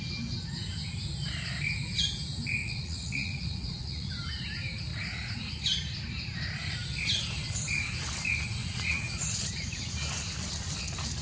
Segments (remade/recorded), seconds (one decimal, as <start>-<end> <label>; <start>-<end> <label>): 0.0-2.6 recorded; 2.6-4.1 remade; 4.1-4.9 recorded; 4.9-5.5 remade; 5.5-8.6 recorded; 8.6-9.9 remade; 9.9-11.2 recorded